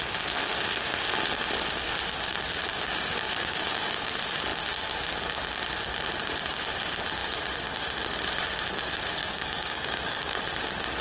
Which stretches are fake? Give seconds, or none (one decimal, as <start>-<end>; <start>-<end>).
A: 2.7-4.1; 9.2-10.4